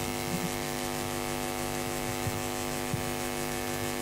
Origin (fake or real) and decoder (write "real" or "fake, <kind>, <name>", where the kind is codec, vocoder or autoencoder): fake, autoencoder, DAC-VAE